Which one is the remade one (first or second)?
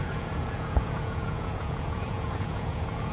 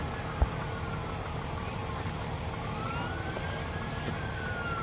first